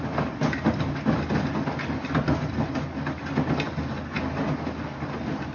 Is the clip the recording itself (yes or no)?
yes